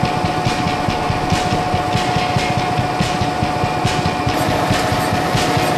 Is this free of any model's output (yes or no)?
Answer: yes